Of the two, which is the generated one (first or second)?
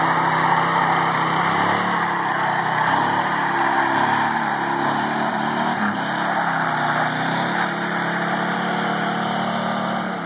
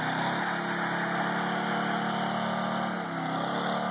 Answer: first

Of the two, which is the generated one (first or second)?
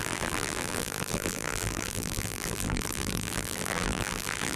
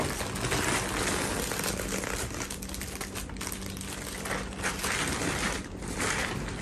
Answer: first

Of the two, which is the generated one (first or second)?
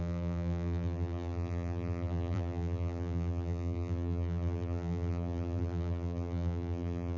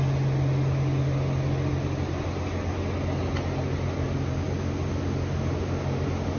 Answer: first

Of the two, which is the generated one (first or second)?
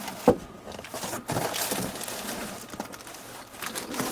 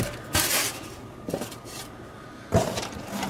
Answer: second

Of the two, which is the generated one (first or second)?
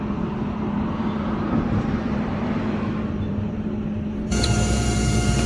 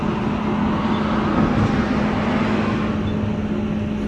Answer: first